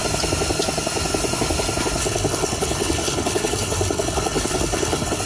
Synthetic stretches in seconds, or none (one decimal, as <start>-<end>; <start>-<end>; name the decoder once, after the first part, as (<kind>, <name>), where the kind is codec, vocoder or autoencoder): 2.0-5.2 (codec, HILCodec)